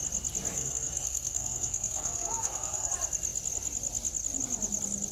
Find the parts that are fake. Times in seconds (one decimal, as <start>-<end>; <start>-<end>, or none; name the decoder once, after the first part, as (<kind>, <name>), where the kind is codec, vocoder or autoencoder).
0.5-2.9 (codec, SNAC)